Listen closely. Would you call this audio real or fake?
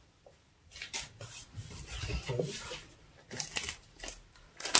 real